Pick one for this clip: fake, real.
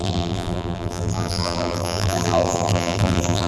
fake